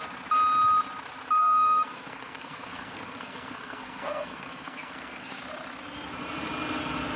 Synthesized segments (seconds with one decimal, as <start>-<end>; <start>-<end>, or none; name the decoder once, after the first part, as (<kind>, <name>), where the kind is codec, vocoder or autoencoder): 1.4-5.4 (codec, SNAC)